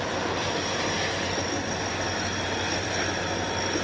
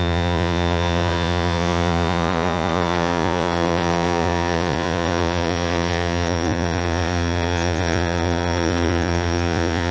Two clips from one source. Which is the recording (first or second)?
first